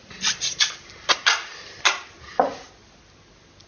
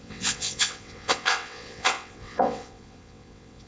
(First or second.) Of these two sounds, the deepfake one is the second